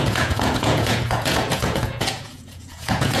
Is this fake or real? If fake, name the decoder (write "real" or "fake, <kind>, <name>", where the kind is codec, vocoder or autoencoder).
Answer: fake, vocoder, Vocos